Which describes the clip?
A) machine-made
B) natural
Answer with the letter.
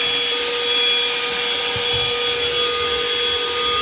B